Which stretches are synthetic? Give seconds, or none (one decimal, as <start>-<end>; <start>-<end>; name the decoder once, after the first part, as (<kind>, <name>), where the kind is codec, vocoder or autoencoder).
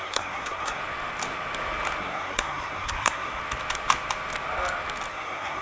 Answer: 0.0-0.8 (codec, SNAC); 2.0-3.4; 5.1-5.6